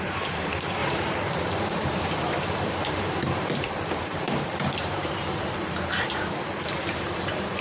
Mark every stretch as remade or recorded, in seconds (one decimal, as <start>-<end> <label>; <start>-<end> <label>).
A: 0.0-7.6 remade